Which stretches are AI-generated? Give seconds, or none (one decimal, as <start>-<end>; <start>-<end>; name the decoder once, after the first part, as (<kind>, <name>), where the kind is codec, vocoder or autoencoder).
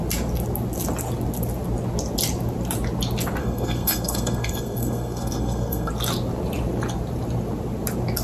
3.4-5.9 (codec, SNAC)